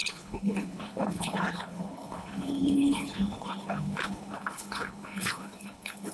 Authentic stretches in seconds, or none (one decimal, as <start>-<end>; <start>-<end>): none